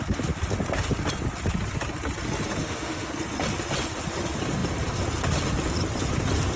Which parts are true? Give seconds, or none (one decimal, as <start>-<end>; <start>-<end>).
0.0-2.6; 3.1-6.6